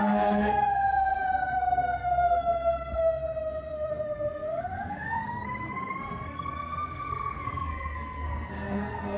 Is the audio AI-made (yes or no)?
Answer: yes